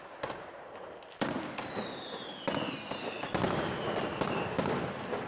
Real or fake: real